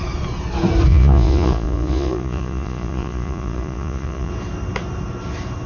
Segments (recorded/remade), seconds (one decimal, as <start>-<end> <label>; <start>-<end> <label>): 0.0-0.9 recorded; 0.9-4.3 remade; 4.3-5.7 recorded